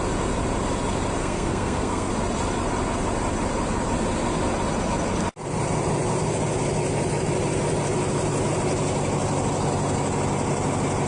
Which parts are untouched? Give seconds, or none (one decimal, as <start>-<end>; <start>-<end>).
0.0-1.2; 2.1-11.1